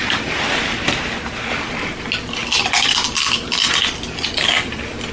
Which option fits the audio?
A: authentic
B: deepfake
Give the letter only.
A